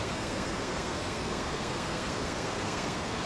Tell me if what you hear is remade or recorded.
remade